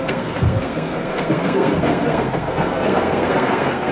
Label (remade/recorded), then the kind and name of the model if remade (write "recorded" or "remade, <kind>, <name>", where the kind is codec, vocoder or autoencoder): remade, codec, SNAC